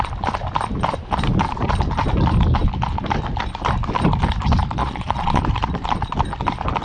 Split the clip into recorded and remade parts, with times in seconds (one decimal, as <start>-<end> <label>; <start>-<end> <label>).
0.0-4.8 recorded; 4.8-5.4 remade; 5.4-6.8 recorded